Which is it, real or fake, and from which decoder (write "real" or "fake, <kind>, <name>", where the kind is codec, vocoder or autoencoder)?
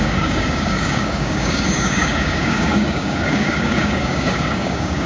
fake, codec, DAC